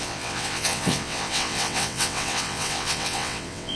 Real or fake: fake